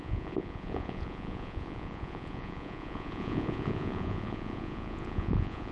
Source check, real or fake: fake